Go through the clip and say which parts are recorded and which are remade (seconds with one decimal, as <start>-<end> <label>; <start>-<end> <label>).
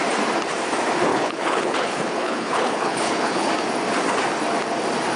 0.0-1.1 recorded; 1.1-3.5 remade; 3.5-5.2 recorded